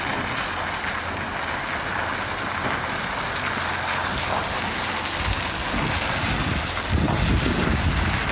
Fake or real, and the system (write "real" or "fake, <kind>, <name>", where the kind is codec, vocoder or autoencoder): real